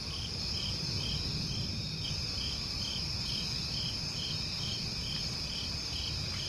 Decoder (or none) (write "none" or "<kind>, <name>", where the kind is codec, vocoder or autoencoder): none